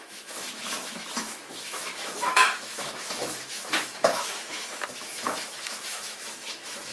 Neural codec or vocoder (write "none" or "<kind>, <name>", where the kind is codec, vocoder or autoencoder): autoencoder, DAC-VAE